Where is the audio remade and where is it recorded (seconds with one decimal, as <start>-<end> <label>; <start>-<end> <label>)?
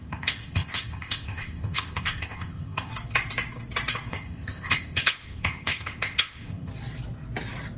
0.0-2.9 remade; 2.9-4.1 recorded; 4.1-6.7 remade; 6.7-7.8 recorded